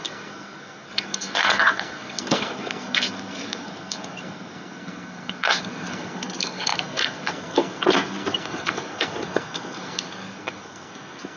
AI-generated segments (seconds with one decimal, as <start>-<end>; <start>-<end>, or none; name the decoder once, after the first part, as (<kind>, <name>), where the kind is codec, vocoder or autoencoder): 0.0-11.4 (codec, SNAC)